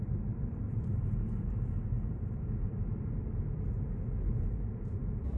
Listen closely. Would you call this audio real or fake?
fake